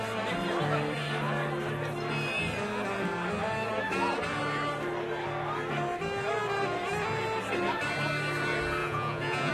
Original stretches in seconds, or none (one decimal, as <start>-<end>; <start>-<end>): 0.0-8.8